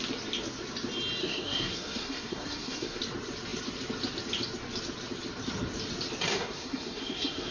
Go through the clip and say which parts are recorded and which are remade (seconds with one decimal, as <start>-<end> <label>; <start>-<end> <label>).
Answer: 0.0-1.2 recorded; 1.2-3.0 remade; 3.0-6.3 recorded; 6.3-7.5 remade